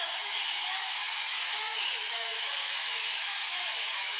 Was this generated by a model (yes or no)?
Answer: yes